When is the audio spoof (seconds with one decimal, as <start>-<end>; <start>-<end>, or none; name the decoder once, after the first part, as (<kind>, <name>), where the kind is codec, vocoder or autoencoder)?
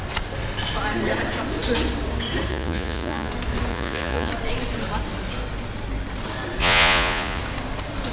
2.5-3.3 (vocoder, Vocos); 3.7-4.3; 6.6-7.4